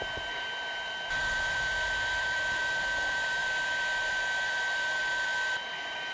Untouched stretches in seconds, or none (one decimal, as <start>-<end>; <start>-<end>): none